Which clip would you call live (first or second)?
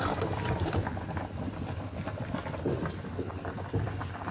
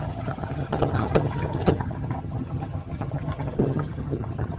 first